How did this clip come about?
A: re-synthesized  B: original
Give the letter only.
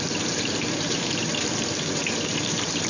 A